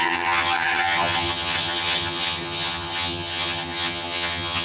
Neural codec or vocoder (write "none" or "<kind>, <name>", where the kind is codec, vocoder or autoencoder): vocoder, HiFi-GAN